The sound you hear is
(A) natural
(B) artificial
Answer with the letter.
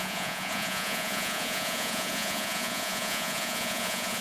B